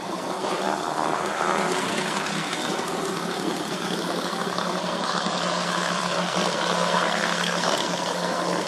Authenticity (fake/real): fake